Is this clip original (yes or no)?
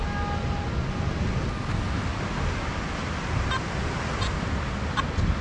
yes